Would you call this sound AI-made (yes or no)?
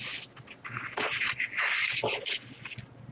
no